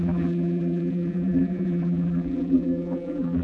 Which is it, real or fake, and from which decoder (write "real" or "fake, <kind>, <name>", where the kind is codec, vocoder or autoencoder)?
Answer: fake, vocoder, BigVGAN v2